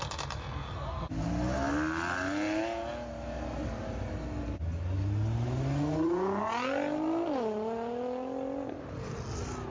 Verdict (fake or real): real